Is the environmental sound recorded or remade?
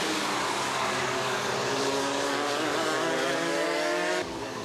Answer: remade